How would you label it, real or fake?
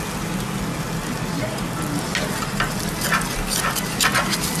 real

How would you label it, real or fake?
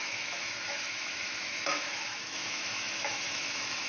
fake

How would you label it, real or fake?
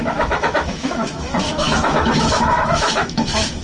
fake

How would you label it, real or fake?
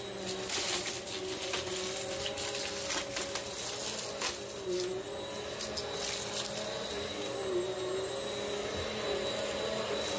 real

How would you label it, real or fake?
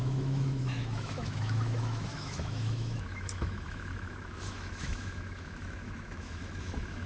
fake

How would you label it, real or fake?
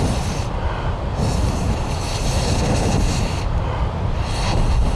real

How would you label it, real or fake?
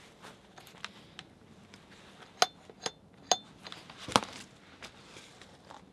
real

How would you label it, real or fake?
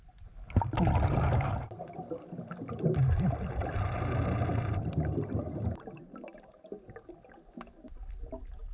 real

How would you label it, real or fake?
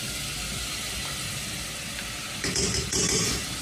real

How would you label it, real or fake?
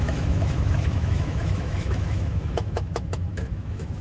fake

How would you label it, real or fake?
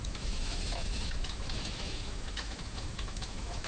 fake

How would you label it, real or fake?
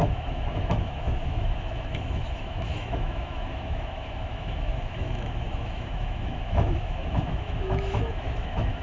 fake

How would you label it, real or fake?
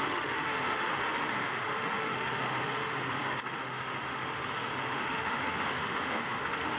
fake